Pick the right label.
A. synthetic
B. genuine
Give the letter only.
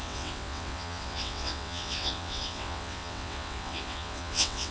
A